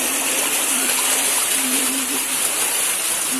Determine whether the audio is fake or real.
fake